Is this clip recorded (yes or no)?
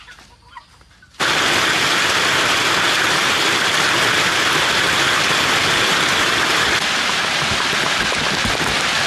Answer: yes